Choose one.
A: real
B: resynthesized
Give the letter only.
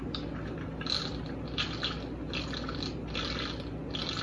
A